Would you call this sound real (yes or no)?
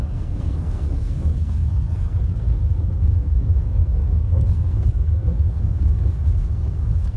no